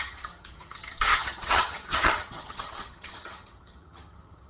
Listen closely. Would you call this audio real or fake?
fake